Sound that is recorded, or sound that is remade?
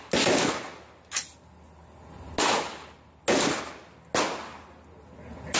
recorded